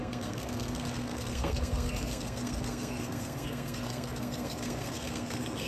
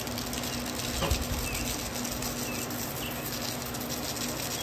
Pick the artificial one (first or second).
first